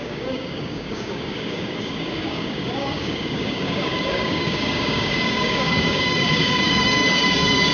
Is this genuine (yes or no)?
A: no